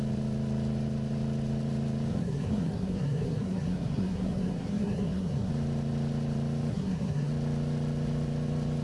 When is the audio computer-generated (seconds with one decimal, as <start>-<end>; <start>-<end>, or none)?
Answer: 2.1-5.5; 6.7-7.3